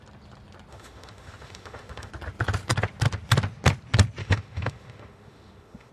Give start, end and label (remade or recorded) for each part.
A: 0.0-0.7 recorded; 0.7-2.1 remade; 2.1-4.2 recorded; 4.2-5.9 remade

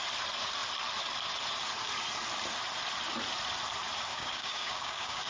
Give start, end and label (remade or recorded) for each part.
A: 0.0-4.1 recorded; 4.1-5.3 remade